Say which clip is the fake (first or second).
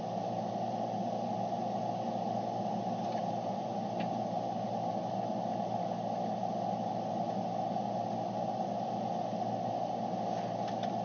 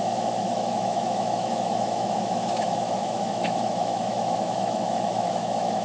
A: second